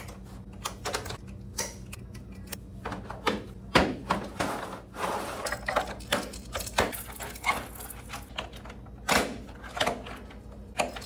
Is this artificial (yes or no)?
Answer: no